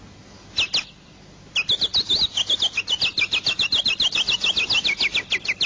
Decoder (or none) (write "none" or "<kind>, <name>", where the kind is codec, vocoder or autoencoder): none